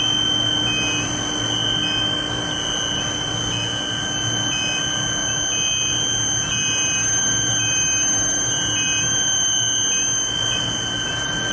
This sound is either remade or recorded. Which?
recorded